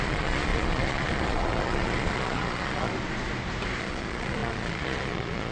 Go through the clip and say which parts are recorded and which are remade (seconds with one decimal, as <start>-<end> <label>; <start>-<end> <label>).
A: 0.0-2.9 remade; 2.9-3.8 recorded; 3.8-5.5 remade